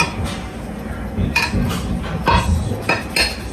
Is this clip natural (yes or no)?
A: yes